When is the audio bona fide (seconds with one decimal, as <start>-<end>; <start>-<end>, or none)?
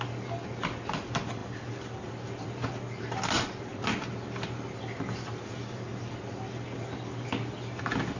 0.0-8.2